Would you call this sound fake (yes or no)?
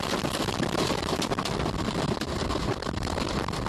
yes